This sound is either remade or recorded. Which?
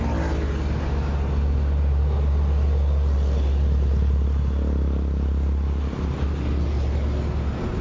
recorded